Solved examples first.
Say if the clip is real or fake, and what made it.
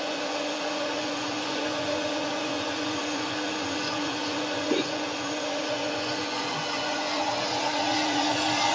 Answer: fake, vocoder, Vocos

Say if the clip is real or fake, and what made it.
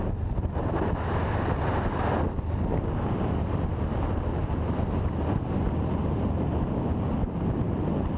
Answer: real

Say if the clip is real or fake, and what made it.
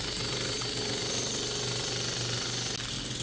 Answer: real